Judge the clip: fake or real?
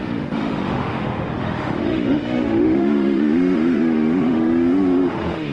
fake